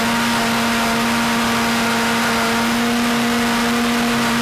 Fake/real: real